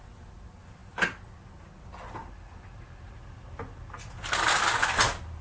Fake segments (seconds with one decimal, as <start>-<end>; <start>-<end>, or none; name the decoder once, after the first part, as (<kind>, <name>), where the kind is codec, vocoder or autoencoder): none